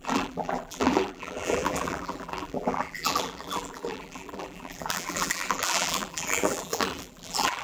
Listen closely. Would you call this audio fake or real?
fake